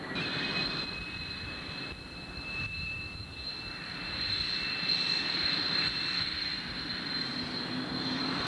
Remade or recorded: recorded